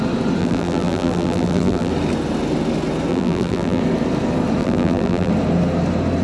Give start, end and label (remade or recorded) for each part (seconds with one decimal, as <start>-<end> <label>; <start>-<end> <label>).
0.0-0.4 recorded; 0.4-1.9 remade; 1.9-3.1 recorded; 3.1-3.8 remade; 3.8-4.6 recorded; 4.6-5.3 remade; 5.3-6.2 recorded